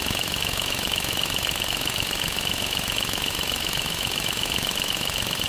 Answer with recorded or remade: remade